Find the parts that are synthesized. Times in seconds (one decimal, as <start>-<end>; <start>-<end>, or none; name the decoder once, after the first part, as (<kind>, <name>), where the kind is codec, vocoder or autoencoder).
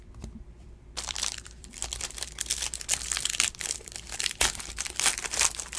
0.0-1.8 (vocoder, BigVGAN v2); 3.5-5.8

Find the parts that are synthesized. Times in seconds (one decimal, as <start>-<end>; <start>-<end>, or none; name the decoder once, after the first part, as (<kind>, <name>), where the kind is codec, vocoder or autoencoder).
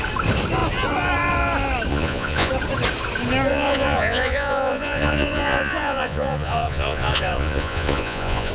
1.9-2.5 (vocoder, Vocos); 3.5-8.5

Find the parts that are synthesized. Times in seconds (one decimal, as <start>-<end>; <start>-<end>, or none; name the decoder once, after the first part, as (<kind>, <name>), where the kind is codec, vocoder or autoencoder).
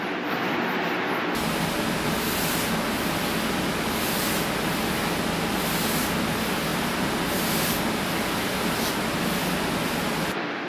none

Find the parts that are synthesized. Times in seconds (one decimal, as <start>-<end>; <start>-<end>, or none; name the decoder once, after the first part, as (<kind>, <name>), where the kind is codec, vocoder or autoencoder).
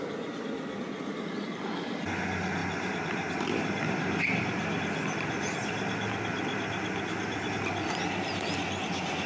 none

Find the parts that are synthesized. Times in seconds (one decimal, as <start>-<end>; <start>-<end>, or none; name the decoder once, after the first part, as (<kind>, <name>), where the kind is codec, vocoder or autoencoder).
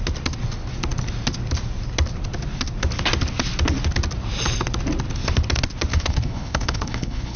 5.9-7.4 (codec, HILCodec)